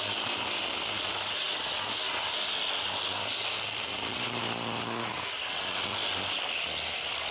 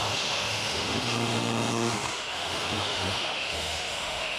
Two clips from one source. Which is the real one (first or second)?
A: first